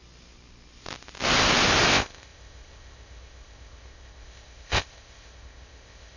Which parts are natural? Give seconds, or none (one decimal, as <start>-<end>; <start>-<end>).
0.0-1.9